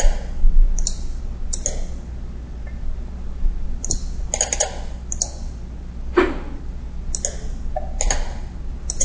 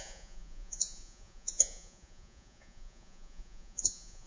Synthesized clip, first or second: second